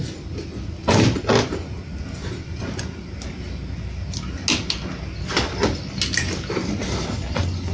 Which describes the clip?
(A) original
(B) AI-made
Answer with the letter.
A